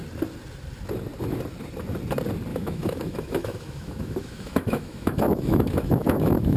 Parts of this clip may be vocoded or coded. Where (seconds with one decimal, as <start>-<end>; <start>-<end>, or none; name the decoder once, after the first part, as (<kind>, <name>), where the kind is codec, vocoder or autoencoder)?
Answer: 2.5-6.6 (autoencoder, DAC-VAE)